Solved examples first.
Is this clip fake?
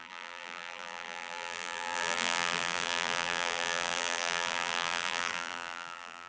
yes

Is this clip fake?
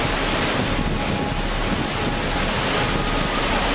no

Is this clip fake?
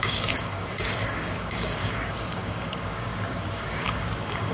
yes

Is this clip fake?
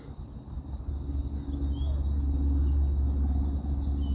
no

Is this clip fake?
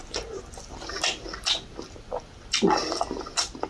no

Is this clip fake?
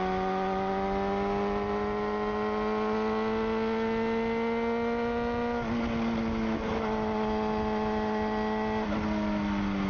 no